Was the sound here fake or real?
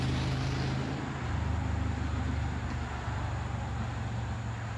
real